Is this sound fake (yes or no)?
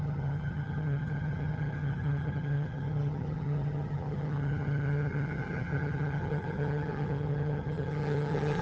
yes